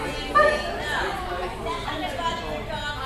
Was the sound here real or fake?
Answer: real